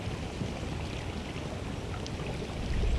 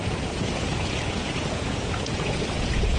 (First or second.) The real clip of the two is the first